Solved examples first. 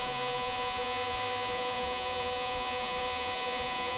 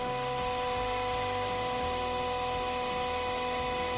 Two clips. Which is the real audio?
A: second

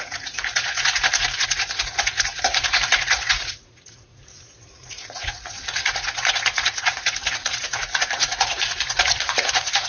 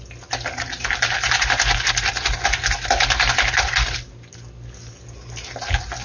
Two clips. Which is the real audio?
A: second